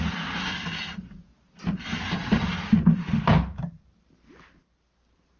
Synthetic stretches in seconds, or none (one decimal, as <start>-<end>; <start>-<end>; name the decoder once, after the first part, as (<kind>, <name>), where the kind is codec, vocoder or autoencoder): 2.2-5.4 (vocoder, BigVGAN v2)